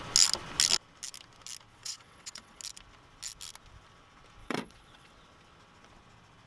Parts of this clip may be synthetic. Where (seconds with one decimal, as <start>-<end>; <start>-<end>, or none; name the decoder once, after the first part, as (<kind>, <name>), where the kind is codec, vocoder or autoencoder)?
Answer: 1.7-2.6 (vocoder, WaveNeXt); 4.4-5.1